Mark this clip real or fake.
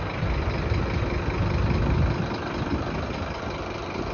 real